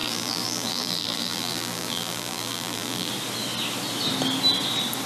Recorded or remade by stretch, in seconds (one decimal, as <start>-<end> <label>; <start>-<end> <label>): 0.0-3.1 remade; 3.1-5.1 recorded